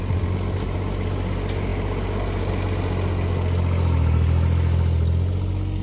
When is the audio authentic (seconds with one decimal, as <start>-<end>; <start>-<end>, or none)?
0.0-5.8